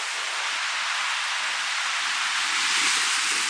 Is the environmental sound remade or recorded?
recorded